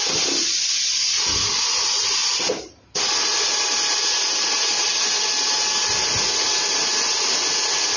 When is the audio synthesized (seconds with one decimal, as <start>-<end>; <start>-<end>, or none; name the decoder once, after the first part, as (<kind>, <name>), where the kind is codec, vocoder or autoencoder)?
none